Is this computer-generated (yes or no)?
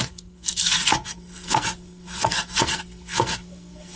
yes